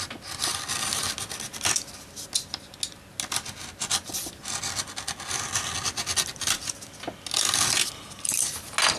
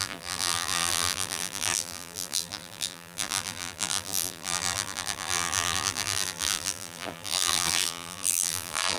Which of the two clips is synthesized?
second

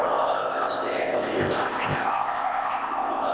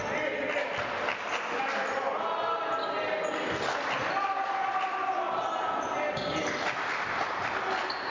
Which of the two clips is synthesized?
first